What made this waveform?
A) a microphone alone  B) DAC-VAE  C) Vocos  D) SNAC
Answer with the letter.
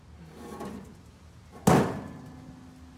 A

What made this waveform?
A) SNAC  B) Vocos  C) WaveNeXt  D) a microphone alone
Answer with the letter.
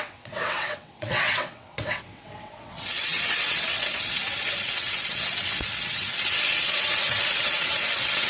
C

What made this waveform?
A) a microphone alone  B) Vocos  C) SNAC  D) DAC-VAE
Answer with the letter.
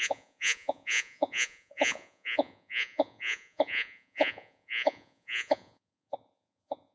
B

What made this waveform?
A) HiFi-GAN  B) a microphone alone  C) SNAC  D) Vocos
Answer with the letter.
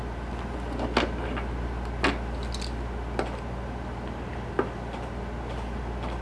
B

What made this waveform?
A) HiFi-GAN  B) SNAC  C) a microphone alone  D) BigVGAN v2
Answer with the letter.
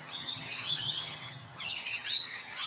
A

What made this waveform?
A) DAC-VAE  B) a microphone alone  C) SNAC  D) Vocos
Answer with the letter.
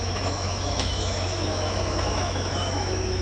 A